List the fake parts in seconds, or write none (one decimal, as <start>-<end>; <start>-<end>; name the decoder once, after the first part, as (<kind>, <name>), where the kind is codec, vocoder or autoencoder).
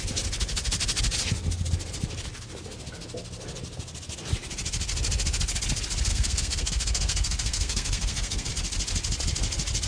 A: 6.1-8.5 (codec, SNAC)